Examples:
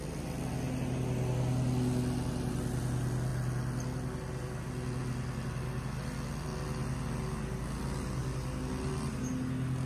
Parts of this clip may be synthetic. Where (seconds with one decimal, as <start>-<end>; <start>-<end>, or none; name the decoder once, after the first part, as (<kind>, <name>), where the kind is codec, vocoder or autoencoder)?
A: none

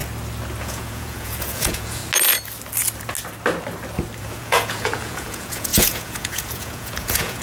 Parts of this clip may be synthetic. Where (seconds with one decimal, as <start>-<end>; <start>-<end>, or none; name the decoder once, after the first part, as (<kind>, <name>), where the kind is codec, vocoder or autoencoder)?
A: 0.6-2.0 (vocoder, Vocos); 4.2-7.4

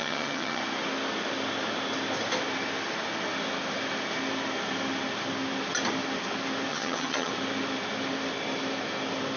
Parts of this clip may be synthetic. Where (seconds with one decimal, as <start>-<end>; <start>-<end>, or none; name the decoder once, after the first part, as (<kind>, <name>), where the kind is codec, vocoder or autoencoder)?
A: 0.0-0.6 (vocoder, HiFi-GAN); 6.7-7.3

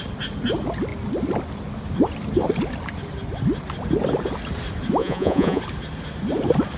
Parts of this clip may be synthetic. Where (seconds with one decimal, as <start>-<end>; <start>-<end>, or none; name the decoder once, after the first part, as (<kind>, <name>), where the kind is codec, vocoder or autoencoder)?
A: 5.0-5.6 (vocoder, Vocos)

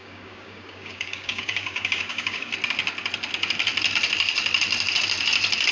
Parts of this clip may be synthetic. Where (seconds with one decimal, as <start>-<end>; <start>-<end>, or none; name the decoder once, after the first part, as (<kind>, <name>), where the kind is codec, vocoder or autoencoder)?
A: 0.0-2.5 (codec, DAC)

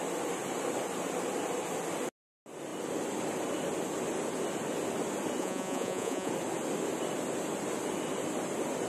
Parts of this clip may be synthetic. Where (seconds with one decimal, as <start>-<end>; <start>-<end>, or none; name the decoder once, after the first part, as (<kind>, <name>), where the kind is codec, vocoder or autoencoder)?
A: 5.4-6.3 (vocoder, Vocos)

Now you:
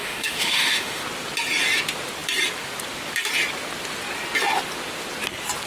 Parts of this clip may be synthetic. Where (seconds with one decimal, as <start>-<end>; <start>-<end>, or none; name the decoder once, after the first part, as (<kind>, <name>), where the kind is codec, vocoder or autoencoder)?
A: 0.0-1.0 (autoencoder, DAC-VAE)

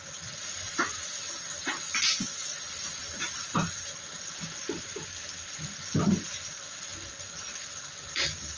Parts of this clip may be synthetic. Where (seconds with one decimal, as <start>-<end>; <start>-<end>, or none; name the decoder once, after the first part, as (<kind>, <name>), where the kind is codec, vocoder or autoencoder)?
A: none